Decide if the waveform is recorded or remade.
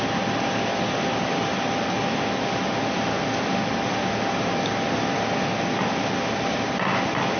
recorded